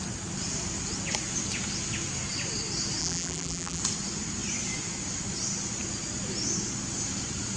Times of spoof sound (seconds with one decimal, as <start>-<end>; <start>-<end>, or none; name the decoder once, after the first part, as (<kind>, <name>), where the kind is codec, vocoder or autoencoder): 3.0-3.8 (vocoder, BigVGAN v2)